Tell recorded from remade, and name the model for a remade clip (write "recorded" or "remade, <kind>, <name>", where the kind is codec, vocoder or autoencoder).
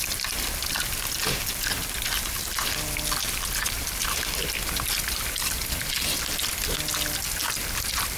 recorded